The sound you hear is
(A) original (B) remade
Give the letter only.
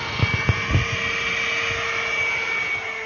A